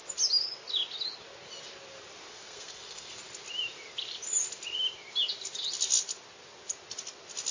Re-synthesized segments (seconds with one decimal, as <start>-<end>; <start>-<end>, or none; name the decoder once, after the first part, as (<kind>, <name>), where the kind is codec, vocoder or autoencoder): 2.3-3.2 (codec, SNAC)